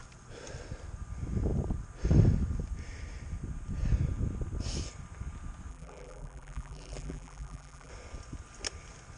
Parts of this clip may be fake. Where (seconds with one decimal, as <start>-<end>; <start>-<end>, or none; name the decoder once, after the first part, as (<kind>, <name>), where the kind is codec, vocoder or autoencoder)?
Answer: 5.7-7.9 (vocoder, BigVGAN v2)